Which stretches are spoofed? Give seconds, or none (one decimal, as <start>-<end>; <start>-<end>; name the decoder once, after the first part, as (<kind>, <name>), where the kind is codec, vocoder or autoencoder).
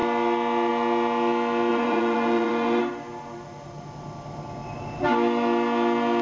1.7-2.8 (vocoder, Vocos)